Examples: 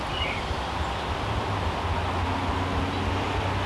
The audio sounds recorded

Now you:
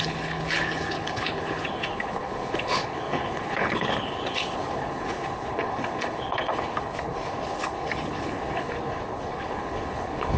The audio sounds remade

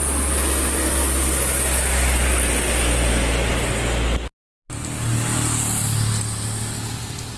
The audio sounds recorded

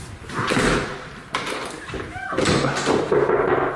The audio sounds recorded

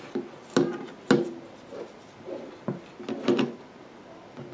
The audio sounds recorded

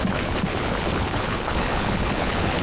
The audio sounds remade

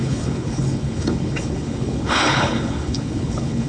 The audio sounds remade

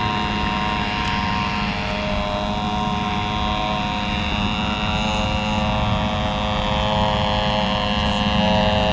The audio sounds recorded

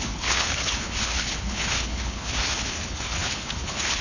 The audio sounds remade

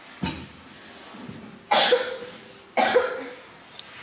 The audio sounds recorded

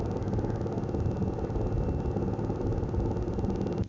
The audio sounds recorded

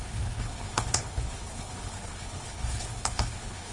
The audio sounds remade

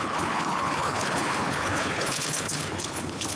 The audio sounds remade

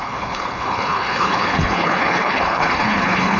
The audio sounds remade